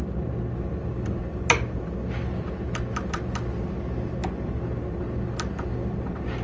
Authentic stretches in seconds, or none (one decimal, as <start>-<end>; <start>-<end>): 0.0-6.4